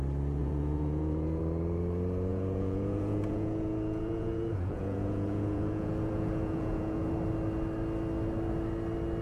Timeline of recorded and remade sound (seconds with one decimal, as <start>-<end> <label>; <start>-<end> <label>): 0.0-0.4 recorded; 0.4-1.4 remade; 1.4-2.3 recorded; 2.3-7.1 remade; 7.1-9.2 recorded